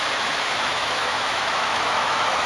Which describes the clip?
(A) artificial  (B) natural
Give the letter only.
A